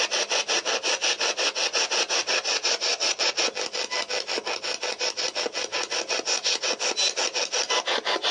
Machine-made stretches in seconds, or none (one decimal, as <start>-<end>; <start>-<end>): 2.9-3.4